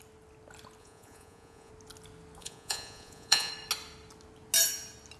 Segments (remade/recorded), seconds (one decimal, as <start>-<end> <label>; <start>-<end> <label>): 0.0-0.8 recorded; 0.8-1.7 remade; 1.7-2.4 recorded; 2.4-3.5 remade; 3.5-5.2 recorded